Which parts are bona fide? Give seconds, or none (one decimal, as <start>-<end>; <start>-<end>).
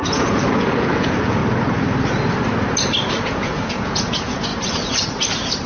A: 1.4-3.2; 4.5-5.7